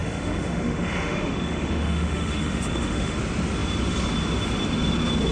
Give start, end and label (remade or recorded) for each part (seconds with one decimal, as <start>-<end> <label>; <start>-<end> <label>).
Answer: 0.0-3.2 remade; 3.2-5.3 recorded